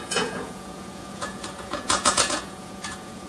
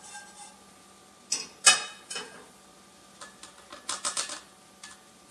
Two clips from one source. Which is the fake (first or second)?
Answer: first